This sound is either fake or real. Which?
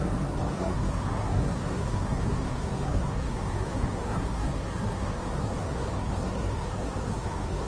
fake